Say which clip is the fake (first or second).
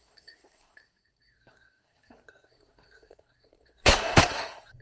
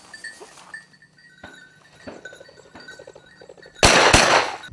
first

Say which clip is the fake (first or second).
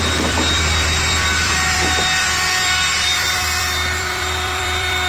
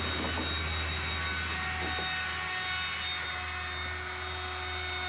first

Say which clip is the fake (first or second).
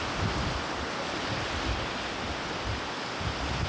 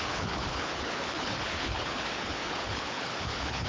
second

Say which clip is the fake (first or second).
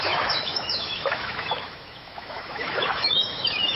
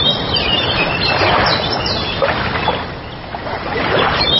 first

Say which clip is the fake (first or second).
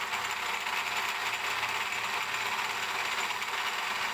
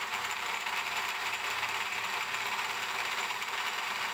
second